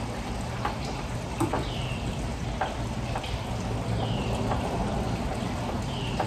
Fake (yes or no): no